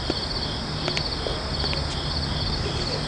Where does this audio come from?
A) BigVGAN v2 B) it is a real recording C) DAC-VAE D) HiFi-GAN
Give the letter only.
B